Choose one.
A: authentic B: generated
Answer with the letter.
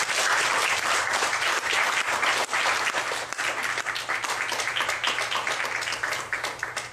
A